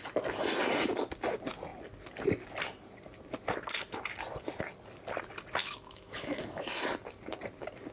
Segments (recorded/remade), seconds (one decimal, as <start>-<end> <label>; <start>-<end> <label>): 0.0-5.6 recorded; 5.6-6.6 remade; 6.6-7.9 recorded